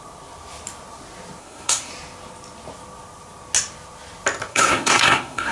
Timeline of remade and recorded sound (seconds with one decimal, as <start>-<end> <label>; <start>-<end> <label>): 0.0-1.4 recorded; 1.4-1.9 remade; 1.9-4.5 recorded; 4.5-5.5 remade